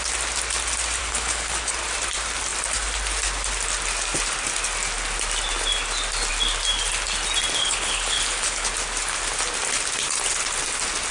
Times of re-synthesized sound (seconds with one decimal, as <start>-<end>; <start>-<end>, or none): 1.0-1.7; 7.6-8.7